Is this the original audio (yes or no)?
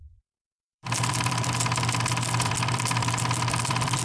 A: no